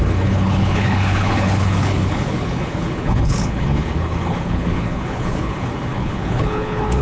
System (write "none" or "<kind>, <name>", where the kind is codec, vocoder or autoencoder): codec, HILCodec